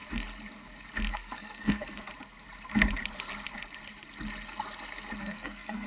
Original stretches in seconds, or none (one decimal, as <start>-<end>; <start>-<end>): 0.0-1.1; 2.1-5.2